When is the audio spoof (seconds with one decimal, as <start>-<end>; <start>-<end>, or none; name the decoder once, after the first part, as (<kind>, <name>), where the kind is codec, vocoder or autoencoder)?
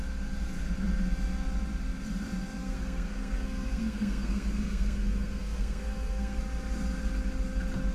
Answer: 2.6-6.4 (codec, SNAC)